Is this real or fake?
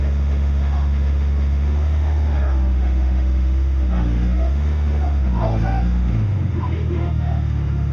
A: fake